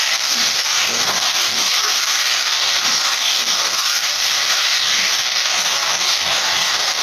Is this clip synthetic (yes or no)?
yes